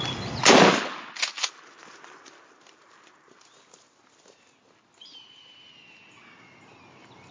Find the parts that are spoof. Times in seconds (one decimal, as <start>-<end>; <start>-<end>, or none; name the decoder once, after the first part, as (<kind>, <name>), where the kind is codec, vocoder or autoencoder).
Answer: none